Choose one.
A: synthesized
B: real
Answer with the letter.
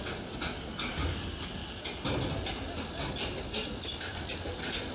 B